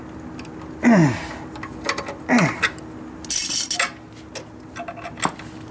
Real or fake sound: real